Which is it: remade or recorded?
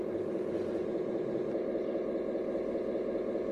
recorded